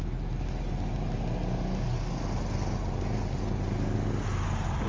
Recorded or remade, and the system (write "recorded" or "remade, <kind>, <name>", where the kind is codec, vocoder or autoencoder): recorded